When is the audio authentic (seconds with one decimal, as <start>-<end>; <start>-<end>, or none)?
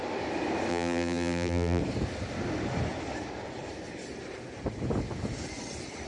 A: 0.0-0.7; 1.8-6.1